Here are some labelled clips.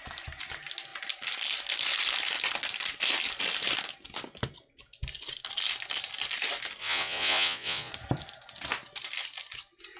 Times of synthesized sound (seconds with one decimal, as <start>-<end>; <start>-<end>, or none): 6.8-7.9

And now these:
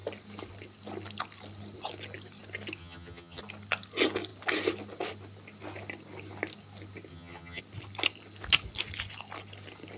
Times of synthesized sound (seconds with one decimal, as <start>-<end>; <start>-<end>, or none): 2.8-3.4; 7.1-7.6

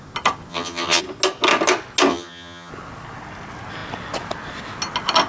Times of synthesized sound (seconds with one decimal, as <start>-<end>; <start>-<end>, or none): 0.5-1.0; 2.1-2.7

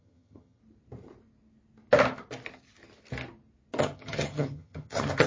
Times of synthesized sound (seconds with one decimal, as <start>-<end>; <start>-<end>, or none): 0.0-0.6; 3.8-5.3

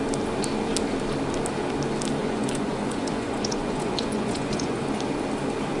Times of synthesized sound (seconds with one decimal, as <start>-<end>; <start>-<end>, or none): 2.2-4.8